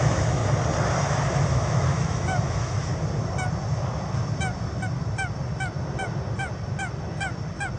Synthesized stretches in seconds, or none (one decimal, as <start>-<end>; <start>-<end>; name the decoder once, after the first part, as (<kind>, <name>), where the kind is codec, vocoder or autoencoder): 0.0-0.4 (autoencoder, DAC-VAE); 1.5-2.9

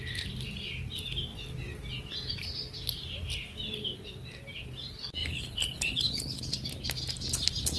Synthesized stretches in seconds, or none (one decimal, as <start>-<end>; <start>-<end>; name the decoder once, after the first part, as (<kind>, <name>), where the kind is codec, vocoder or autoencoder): 5.2-6.4 (codec, HILCodec)

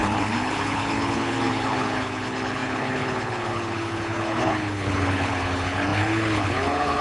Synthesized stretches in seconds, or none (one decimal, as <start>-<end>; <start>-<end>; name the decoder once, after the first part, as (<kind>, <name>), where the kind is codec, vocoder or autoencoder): 0.0-7.0 (codec, HILCodec)

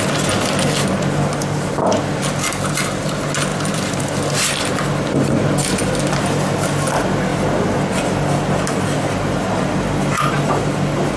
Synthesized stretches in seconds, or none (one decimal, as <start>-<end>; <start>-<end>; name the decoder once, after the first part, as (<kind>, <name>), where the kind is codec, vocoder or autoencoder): 3.5-4.0 (vocoder, BigVGAN v2)

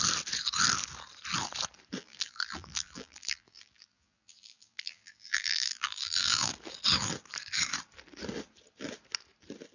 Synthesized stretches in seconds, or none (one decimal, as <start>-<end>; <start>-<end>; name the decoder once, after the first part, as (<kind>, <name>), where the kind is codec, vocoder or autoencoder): 2.0-6.5 (vocoder, BigVGAN v2)